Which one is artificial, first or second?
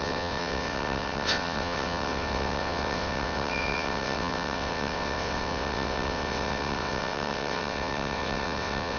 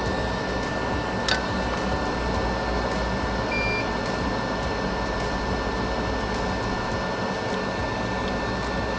first